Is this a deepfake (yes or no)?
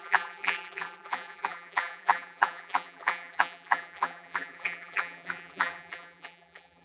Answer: yes